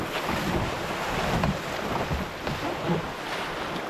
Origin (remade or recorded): recorded